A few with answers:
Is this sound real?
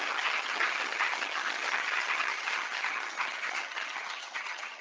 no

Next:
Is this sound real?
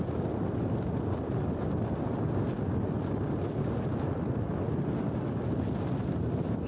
yes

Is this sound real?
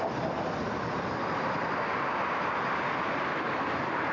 yes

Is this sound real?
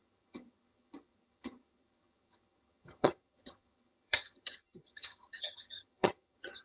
no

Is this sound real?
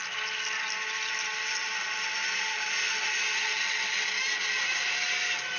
yes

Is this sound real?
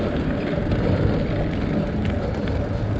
yes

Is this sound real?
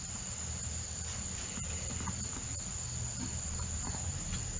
yes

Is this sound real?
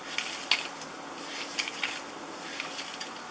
yes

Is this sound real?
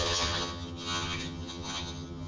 no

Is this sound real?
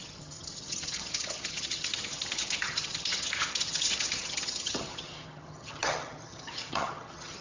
no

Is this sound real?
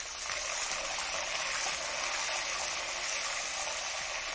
yes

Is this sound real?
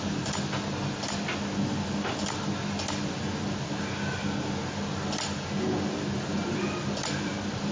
yes